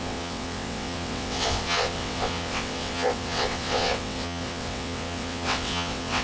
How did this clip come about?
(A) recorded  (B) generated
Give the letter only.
B